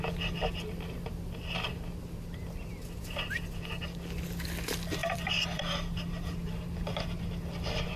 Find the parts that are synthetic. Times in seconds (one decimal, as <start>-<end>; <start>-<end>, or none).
5.0-5.6